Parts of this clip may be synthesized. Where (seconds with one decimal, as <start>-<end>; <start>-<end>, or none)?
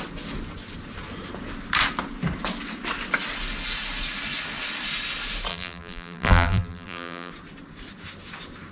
5.5-7.3